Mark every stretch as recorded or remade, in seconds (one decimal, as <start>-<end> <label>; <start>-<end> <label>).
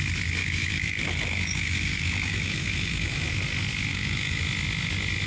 0.0-0.4 recorded; 0.4-3.3 remade; 3.3-3.9 recorded; 3.9-4.4 remade; 4.4-5.3 recorded